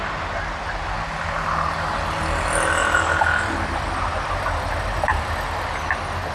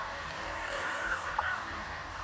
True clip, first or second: first